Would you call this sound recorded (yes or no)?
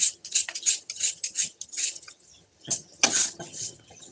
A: no